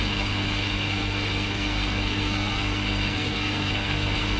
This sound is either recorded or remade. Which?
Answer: remade